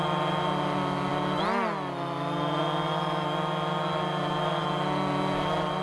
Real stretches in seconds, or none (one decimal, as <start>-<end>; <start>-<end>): 0.0-5.8